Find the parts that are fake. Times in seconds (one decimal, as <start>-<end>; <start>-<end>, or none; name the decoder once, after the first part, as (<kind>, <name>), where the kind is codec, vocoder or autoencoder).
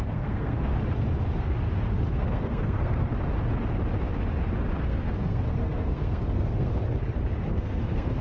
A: 0.0-0.7 (codec, SNAC); 2.1-3.1; 4.8-6.7; 7.5-8.2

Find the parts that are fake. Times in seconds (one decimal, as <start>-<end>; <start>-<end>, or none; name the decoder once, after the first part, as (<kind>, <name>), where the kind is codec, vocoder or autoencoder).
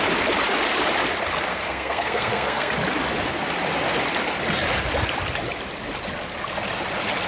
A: 1.5-2.7 (codec, SNAC)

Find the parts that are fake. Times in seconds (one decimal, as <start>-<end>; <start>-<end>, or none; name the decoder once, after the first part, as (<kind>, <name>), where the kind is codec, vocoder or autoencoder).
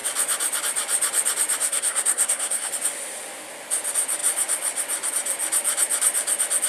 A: 1.6-2.7 (codec, SNAC)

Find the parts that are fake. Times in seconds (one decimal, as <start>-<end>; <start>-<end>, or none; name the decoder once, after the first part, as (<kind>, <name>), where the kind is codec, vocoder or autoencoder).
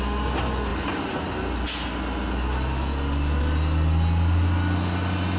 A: none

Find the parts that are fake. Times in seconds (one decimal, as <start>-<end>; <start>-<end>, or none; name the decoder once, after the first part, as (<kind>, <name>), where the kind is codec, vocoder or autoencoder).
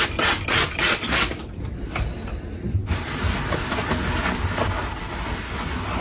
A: none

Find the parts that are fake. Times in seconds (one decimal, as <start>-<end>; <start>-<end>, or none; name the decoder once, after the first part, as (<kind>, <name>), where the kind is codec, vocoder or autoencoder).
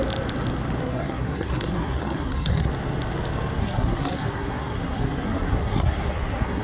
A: 0.8-2.7 (codec, SNAC); 3.6-6.6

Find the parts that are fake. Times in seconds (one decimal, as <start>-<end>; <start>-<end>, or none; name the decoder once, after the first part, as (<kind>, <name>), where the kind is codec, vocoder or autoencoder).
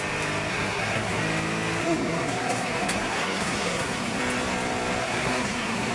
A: 0.5-1.2 (codec, SNAC); 1.8-4.2; 5.0-5.9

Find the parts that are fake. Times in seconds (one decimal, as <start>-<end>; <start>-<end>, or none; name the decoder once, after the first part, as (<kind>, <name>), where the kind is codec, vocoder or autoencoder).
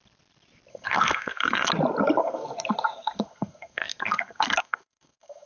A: 0.7-1.7 (codec, SNAC); 2.2-5.5